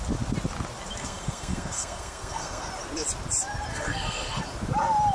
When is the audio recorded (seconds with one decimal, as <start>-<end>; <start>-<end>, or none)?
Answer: 0.0-1.0; 2.7-3.7; 4.4-5.1